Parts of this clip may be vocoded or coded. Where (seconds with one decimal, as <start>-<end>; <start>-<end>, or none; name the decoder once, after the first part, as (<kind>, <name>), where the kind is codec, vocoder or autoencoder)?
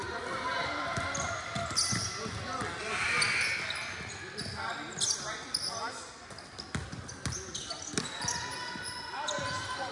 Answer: none